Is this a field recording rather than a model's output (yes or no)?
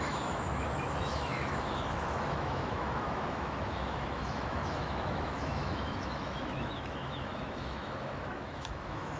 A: no